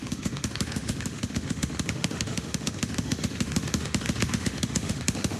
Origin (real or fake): fake